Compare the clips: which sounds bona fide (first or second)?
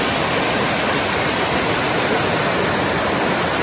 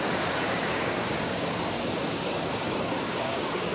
first